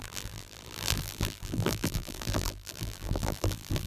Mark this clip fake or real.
fake